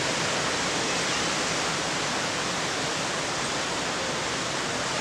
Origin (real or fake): real